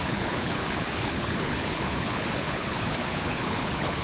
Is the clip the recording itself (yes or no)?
no